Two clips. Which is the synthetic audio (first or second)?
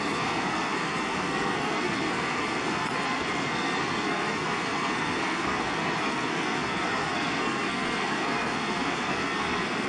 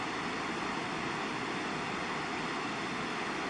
first